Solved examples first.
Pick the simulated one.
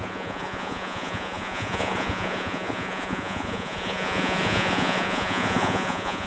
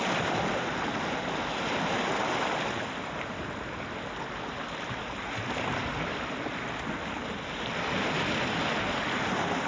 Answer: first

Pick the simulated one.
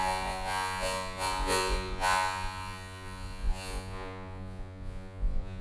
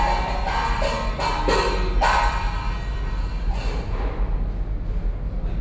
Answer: first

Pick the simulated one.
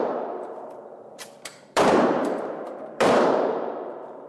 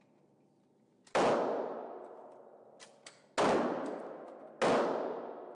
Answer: first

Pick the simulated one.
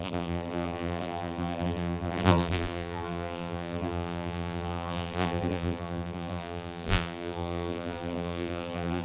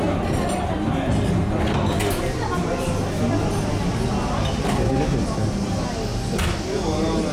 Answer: first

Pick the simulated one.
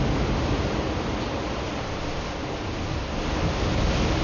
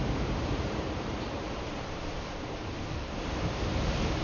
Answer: second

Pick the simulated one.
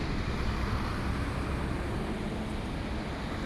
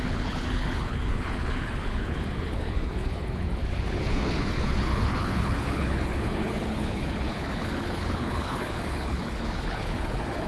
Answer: second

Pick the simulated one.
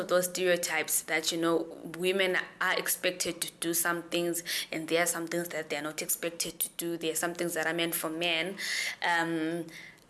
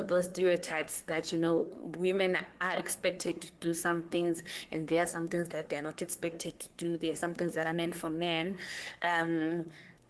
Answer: second